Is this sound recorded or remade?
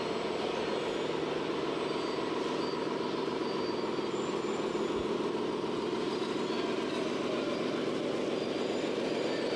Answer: recorded